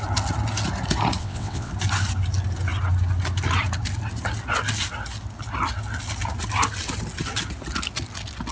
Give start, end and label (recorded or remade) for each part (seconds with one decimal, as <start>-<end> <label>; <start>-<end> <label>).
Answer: 0.0-1.2 recorded; 1.2-1.7 remade; 1.7-8.5 recorded